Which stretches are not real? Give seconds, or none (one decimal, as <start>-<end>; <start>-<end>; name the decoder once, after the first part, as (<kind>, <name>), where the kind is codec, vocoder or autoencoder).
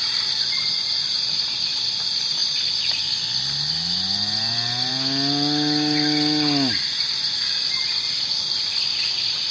none